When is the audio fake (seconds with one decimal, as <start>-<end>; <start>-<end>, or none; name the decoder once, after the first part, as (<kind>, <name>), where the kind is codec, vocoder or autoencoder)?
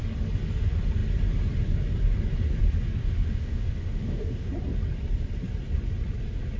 3.0-4.5 (autoencoder, DAC-VAE)